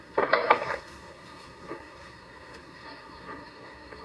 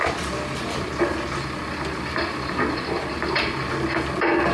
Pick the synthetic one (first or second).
first